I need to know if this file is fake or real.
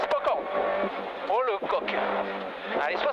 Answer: real